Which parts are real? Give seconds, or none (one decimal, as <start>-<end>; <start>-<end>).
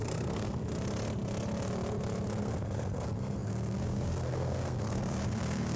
0.6-2.4